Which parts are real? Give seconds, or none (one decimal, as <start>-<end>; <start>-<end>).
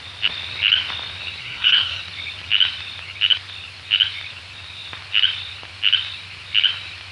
0.0-1.4; 2.0-7.1